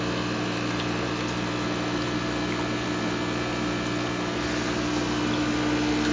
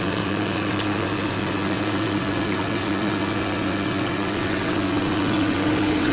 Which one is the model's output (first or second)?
second